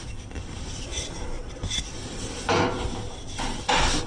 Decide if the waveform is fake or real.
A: real